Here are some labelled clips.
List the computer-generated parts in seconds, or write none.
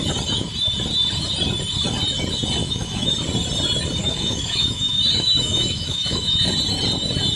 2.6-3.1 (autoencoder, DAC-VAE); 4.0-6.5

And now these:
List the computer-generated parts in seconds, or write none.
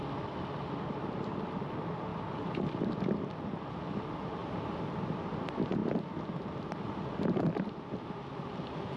2.1-3.6 (vocoder, BigVGAN v2); 4.4-5.0; 5.8-7.8